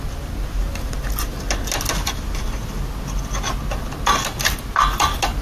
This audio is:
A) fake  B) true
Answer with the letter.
B